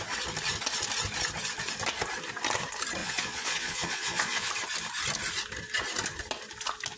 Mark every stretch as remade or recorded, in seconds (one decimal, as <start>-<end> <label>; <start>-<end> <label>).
0.0-3.0 recorded; 3.0-4.5 remade; 4.5-7.0 recorded